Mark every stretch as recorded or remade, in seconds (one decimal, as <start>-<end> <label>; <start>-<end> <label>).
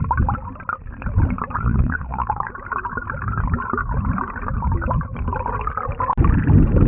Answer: 0.0-1.6 recorded; 1.6-2.5 remade; 2.5-6.9 recorded